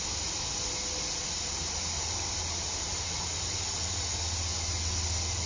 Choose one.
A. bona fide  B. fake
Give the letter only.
A